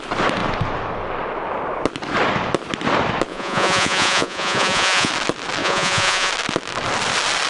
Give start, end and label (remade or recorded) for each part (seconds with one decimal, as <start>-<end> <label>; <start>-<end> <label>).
0.0-3.3 recorded; 3.3-5.1 remade; 5.1-5.6 recorded; 5.6-6.3 remade; 6.3-7.5 recorded